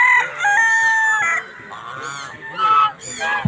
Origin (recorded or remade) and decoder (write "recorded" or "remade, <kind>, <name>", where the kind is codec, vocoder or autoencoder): recorded